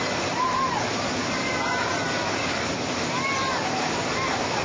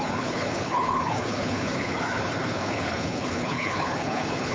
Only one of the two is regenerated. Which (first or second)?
second